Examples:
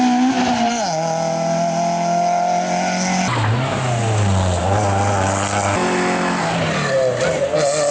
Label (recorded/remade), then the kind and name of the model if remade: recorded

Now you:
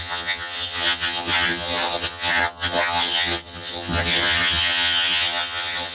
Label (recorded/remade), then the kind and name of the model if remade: remade, vocoder, HiFi-GAN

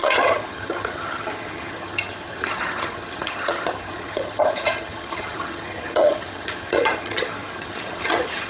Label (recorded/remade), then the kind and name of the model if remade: remade, vocoder, HiFi-GAN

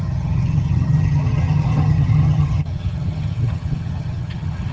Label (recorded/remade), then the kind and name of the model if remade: remade, vocoder, HiFi-GAN